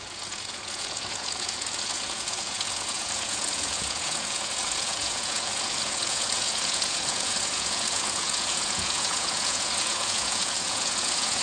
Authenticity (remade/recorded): remade